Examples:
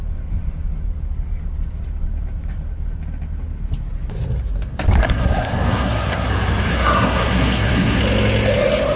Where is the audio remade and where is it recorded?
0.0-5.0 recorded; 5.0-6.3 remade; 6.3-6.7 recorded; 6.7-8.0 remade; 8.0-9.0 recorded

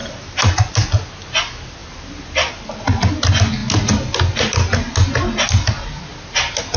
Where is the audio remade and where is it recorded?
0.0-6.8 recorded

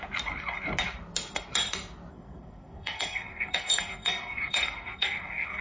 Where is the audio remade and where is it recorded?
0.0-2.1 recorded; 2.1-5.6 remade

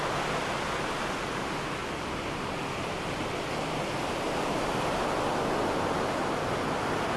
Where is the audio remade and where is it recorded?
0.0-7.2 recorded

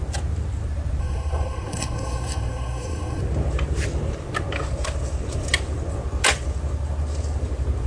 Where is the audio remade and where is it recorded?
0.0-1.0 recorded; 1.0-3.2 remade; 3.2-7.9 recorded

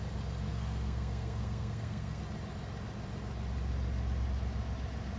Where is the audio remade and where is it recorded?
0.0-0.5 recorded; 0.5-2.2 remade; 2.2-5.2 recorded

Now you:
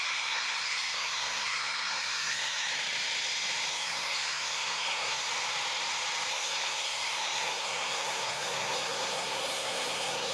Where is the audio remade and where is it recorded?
0.0-2.7 remade; 2.7-3.7 recorded; 3.7-5.3 remade; 5.3-6.3 recorded; 6.3-10.3 remade